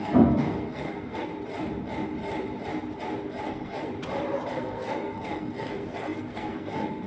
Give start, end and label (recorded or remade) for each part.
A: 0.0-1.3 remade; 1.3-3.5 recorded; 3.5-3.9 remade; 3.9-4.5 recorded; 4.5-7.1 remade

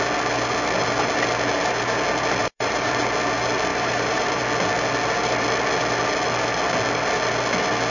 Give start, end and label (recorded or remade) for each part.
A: 0.0-2.4 recorded; 2.4-3.0 remade; 3.0-3.7 recorded; 3.7-4.4 remade; 4.4-7.9 recorded